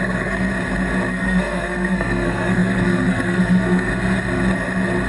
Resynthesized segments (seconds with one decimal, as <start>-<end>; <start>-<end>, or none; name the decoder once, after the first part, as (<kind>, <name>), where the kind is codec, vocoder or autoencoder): 0.0-0.5 (codec, SNAC); 1.1-3.9